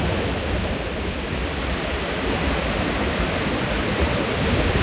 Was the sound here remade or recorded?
recorded